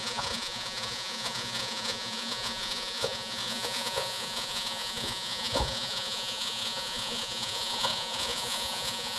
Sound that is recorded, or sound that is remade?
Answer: remade